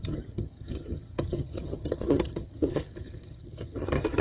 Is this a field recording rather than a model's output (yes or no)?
no